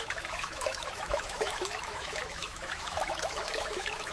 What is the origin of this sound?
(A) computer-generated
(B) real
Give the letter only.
A